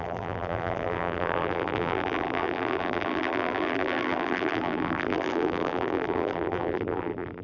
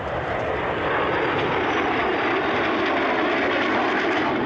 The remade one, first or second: first